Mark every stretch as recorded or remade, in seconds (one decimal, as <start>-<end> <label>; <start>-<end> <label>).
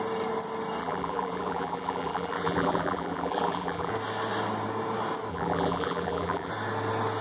0.0-0.8 recorded; 0.8-3.9 remade; 3.9-5.3 recorded; 5.3-6.5 remade; 6.5-7.2 recorded